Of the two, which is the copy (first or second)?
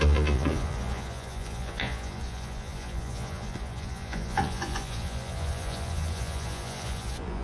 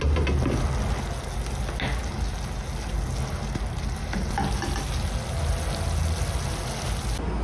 first